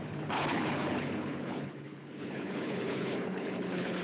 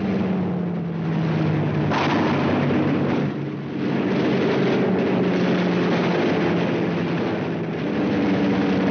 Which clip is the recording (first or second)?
second